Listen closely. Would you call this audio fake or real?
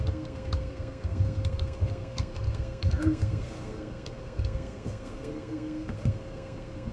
fake